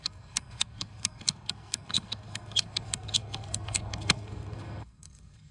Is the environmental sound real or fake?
fake